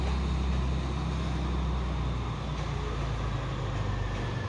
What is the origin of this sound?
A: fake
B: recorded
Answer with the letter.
B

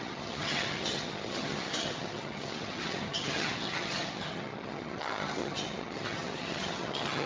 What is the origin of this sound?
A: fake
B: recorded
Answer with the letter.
A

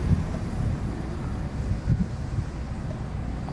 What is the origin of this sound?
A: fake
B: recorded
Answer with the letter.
B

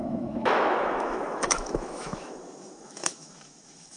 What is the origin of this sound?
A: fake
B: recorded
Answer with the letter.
A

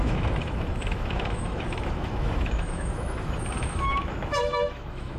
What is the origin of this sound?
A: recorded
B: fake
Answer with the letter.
B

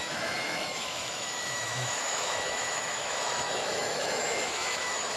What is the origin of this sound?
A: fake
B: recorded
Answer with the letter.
A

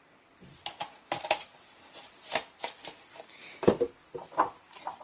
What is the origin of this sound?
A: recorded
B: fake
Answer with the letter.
A